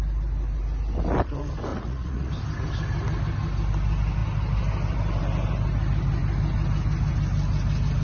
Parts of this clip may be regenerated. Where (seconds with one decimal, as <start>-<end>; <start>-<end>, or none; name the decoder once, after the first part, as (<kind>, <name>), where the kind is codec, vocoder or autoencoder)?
1.7-2.3 (vocoder, Vocos)